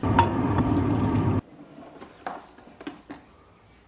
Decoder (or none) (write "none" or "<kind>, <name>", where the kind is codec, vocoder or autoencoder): none